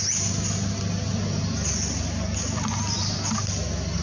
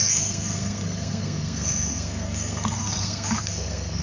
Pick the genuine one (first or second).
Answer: first